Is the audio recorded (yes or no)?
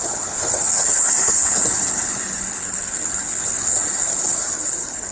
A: no